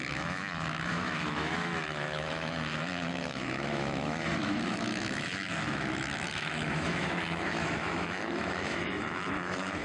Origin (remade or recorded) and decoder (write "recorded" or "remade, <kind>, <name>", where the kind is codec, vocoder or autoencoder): remade, autoencoder, DAC-VAE